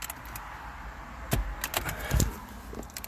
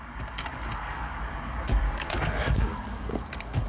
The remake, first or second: second